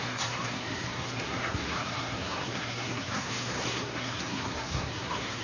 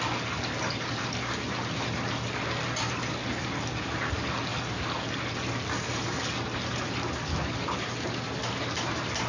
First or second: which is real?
second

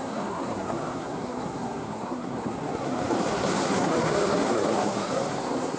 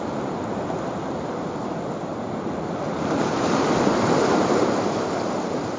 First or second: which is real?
second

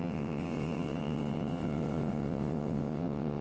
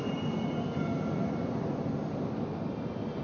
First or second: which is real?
second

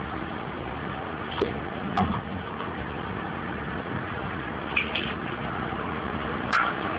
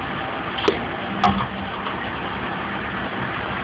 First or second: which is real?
second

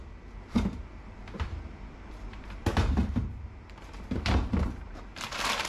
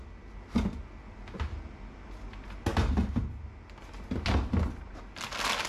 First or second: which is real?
second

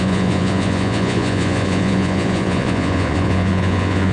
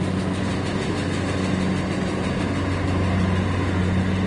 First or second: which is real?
second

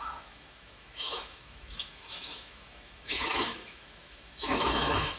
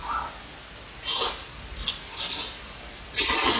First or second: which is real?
second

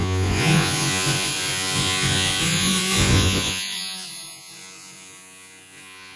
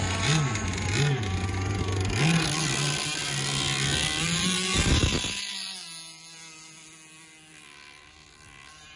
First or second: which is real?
second